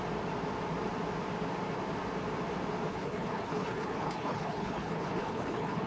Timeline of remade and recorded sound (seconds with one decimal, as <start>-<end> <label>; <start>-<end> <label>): 0.0-2.9 recorded; 2.9-5.9 remade